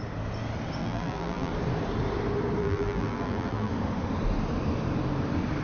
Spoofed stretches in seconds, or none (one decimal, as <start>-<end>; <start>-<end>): 0.8-1.5; 2.6-3.7